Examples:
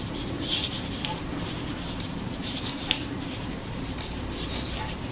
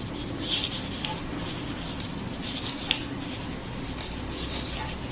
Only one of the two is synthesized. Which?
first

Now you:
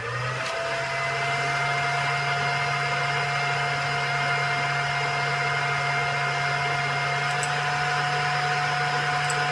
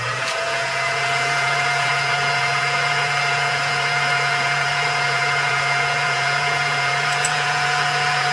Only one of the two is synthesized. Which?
second